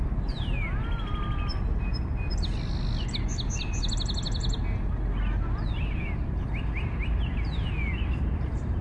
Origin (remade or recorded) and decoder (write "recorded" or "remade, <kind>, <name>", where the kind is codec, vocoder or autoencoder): recorded